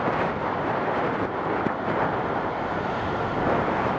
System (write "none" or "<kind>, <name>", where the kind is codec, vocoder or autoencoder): vocoder, BigVGAN v2